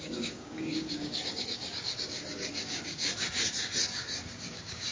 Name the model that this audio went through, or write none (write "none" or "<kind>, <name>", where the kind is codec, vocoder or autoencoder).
codec, DAC